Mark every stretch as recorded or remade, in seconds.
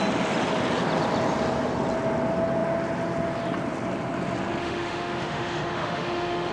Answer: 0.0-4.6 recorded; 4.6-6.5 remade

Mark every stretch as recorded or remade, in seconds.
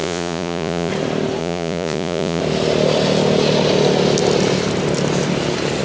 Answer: 0.0-0.9 remade; 0.9-1.4 recorded; 1.4-2.4 remade; 2.4-5.8 recorded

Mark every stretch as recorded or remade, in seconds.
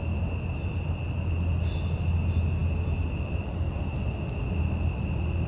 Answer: 0.0-5.5 recorded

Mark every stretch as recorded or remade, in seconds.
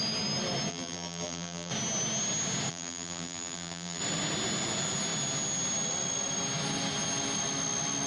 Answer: 0.0-0.7 recorded; 0.7-1.7 remade; 1.7-2.7 recorded; 2.7-4.0 remade; 4.0-8.1 recorded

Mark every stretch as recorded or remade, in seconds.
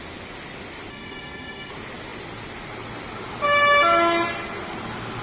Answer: 0.0-0.9 recorded; 0.9-1.7 remade; 1.7-5.2 recorded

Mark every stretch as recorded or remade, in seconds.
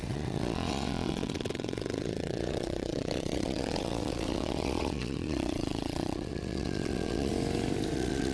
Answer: 0.0-7.3 remade; 7.3-7.9 recorded; 7.9-8.3 remade